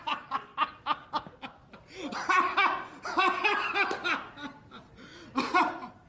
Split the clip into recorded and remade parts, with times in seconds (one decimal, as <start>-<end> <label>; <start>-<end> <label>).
0.0-6.1 recorded